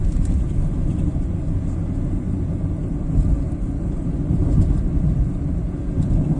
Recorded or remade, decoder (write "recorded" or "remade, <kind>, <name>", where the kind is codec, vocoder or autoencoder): remade, vocoder, BigVGAN v2